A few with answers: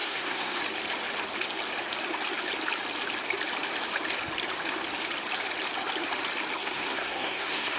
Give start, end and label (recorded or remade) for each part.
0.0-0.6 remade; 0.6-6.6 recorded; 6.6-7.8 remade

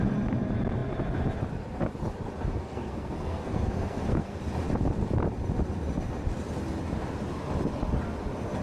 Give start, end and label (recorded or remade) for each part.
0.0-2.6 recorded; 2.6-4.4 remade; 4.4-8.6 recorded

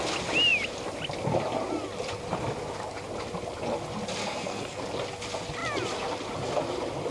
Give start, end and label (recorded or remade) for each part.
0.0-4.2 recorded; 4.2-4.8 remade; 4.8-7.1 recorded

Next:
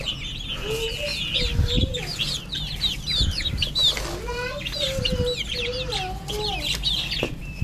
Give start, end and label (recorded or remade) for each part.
0.0-7.6 recorded